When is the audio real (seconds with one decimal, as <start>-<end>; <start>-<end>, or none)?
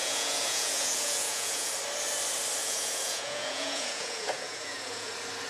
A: 1.7-2.6; 5.1-5.5